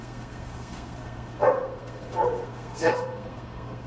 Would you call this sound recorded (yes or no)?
no